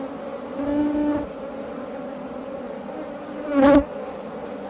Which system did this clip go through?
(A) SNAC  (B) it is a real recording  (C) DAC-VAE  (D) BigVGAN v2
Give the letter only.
B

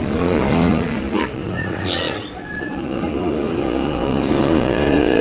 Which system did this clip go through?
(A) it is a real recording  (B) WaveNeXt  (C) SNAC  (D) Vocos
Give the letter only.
D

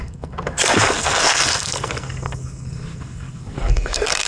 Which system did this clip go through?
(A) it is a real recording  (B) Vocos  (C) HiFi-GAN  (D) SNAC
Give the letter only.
D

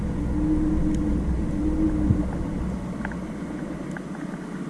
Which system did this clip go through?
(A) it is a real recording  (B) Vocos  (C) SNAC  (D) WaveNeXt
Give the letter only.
A